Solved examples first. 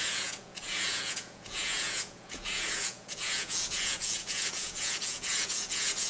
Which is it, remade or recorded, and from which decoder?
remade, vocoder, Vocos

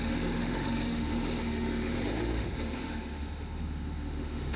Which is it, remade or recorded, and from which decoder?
remade, autoencoder, DAC-VAE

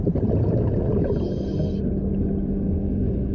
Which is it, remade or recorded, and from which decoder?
recorded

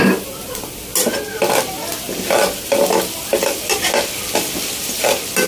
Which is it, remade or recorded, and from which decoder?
recorded